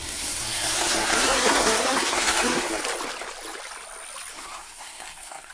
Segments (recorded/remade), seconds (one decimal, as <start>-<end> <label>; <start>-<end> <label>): 0.0-2.8 remade; 2.8-4.3 recorded; 4.3-5.5 remade